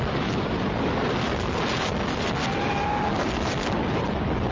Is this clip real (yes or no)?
yes